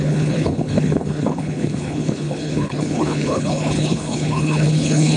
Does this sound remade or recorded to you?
remade